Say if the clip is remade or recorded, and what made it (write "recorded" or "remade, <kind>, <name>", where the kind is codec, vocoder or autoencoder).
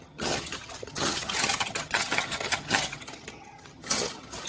remade, vocoder, HiFi-GAN